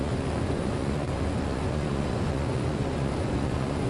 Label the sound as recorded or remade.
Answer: remade